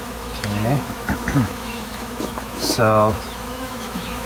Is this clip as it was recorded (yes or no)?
no